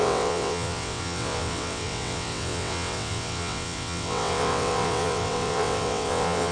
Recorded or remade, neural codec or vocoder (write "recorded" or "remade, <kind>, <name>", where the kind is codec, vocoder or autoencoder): remade, vocoder, WaveNeXt